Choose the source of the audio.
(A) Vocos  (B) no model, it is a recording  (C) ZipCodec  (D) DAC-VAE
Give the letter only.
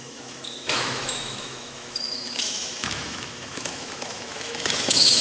D